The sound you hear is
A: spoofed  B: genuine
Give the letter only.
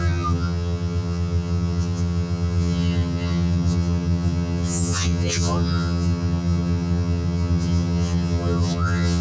A